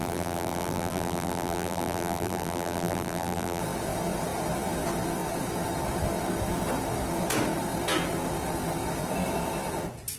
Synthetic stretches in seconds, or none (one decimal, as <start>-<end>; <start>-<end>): 0.0-3.6